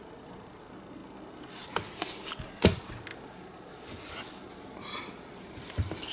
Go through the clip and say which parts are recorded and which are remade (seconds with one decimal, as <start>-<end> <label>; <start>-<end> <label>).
0.0-1.0 remade; 1.0-2.4 recorded; 2.4-3.1 remade; 3.1-5.4 recorded; 5.4-6.1 remade